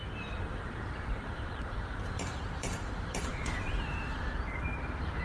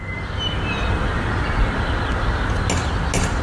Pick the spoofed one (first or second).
first